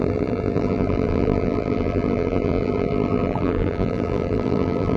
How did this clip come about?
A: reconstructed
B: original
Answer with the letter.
A